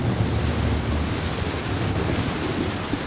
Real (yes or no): yes